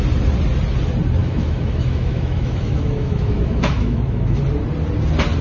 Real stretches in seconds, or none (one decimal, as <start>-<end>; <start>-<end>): 0.0-1.2; 4.4-5.4